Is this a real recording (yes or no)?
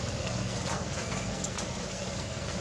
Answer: no